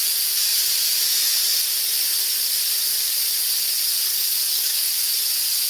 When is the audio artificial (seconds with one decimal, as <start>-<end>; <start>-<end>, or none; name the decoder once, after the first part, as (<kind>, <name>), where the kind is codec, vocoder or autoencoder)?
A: 4.1-4.9 (codec, DAC)